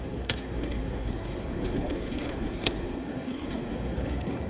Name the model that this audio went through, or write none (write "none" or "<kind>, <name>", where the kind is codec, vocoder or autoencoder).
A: codec, SNAC